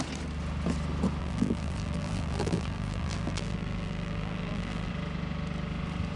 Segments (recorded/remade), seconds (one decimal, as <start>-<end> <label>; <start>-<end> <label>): 0.0-1.2 recorded; 1.2-4.9 remade; 4.9-6.2 recorded